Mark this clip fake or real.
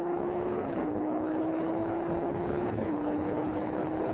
fake